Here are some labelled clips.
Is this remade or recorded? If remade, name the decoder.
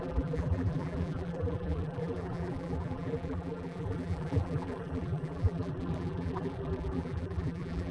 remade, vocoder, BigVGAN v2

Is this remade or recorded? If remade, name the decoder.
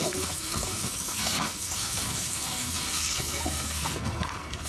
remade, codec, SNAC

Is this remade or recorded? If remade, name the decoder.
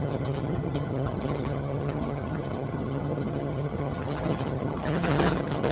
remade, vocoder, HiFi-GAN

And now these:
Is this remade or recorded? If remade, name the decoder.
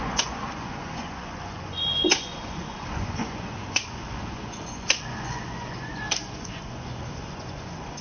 remade, vocoder, Vocos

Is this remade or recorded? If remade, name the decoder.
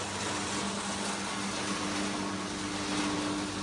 recorded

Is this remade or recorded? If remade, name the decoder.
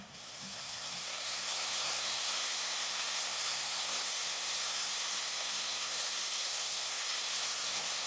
remade, codec, SNAC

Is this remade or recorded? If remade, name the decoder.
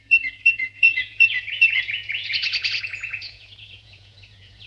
remade, vocoder, Vocos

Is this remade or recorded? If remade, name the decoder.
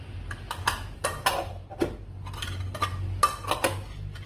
recorded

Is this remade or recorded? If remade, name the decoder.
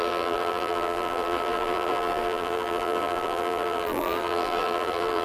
remade, vocoder, BigVGAN v2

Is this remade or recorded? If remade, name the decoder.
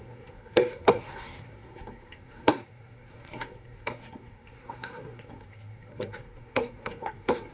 remade, codec, SNAC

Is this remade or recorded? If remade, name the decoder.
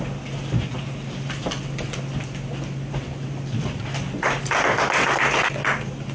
recorded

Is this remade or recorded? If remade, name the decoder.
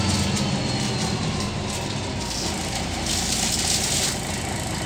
recorded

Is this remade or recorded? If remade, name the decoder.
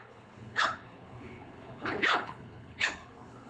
remade, codec, HILCodec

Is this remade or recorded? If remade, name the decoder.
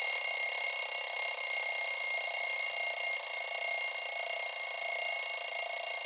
recorded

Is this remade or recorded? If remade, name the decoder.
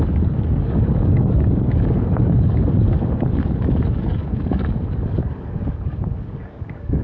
remade, codec, DAC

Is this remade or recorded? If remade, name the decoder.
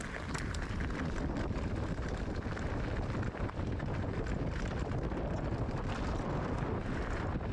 recorded